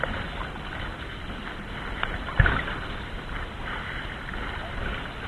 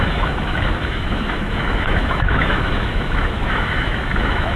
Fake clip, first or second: second